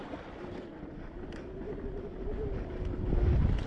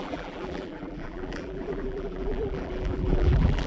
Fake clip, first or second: second